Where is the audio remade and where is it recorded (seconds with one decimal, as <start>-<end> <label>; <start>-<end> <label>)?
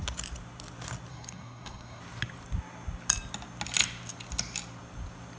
0.0-1.1 recorded; 1.1-2.0 remade; 2.0-5.4 recorded